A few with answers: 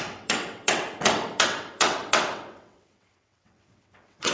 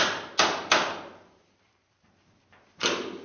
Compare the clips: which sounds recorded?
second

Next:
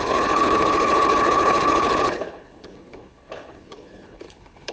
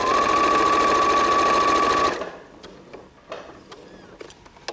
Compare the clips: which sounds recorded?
second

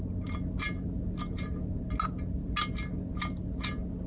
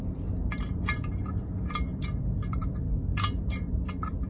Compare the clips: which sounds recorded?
first